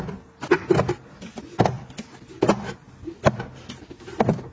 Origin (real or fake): real